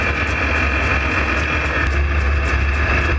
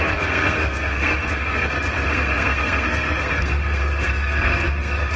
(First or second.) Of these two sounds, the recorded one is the first